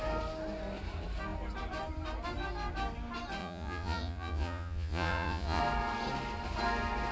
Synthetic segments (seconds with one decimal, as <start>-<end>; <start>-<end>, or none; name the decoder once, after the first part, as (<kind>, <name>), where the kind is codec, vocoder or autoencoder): 3.4-5.6 (vocoder, Vocos)